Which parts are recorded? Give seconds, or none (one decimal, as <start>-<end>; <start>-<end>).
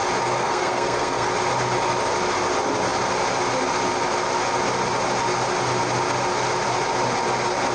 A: 0.0-0.4; 1.3-7.7